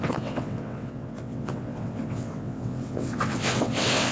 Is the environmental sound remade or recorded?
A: remade